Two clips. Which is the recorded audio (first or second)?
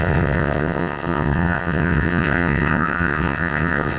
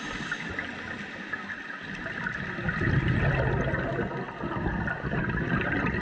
second